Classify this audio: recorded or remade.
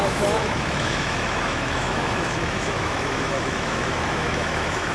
remade